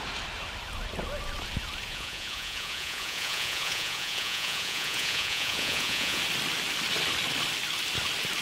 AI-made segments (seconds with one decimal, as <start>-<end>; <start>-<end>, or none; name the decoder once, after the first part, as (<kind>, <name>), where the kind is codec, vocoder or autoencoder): 1.9-6.2 (vocoder, Vocos)